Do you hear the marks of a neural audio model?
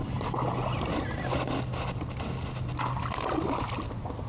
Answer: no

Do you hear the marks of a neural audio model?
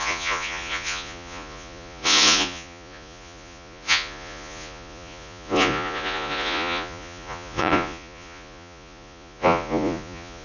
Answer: yes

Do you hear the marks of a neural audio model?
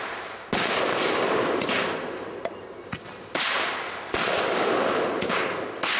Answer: no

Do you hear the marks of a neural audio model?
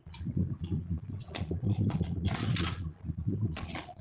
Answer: yes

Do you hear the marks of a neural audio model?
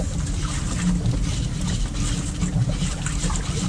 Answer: no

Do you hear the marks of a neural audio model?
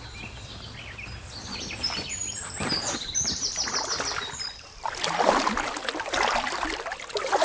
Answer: no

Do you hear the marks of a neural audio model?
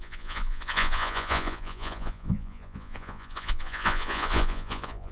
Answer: yes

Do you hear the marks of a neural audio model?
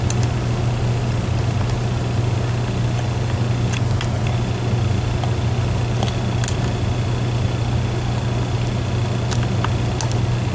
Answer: no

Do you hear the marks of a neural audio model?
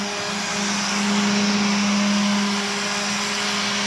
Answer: no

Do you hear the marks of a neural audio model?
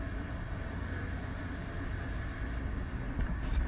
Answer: no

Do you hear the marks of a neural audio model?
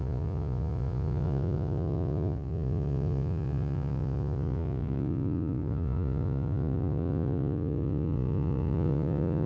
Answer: yes